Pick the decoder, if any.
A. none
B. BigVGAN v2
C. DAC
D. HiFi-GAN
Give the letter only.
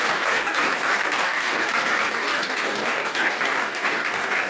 C